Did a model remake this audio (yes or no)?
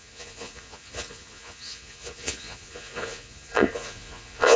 yes